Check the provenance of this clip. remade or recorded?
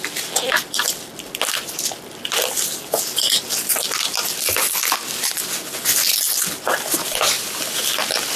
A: recorded